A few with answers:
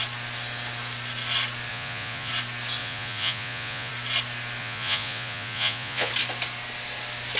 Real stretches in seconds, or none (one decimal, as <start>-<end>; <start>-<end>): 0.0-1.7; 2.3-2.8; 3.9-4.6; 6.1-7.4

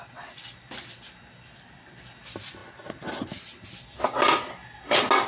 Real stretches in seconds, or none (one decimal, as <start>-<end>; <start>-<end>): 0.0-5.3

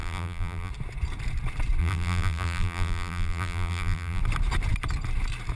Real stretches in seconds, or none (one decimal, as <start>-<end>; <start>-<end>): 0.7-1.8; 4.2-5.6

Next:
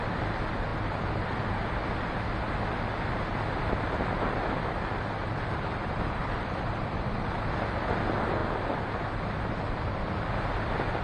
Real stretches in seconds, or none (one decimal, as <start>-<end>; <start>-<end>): 0.0-0.7; 1.5-5.2; 7.4-11.0